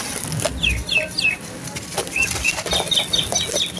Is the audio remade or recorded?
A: recorded